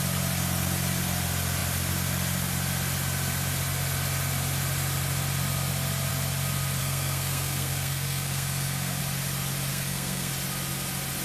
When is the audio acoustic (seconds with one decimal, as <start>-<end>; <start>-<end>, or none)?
0.0-6.8; 9.0-9.7; 10.3-11.2